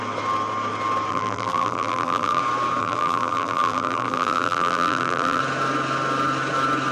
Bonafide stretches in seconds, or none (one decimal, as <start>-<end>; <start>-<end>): 0.0-1.1; 2.4-2.8; 5.4-6.9